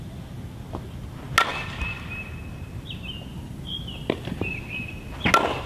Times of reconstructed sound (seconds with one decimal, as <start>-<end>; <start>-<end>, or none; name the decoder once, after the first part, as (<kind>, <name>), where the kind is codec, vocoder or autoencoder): 3.3-4.4 (vocoder, BigVGAN v2)